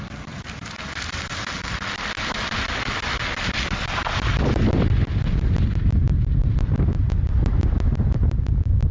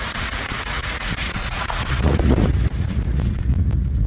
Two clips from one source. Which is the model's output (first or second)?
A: second